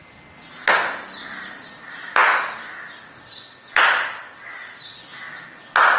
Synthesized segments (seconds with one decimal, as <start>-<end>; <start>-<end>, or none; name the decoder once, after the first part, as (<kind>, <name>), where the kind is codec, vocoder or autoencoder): none